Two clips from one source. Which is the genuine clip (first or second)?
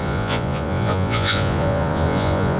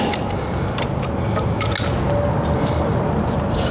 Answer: second